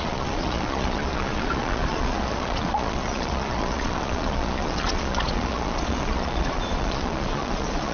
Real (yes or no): no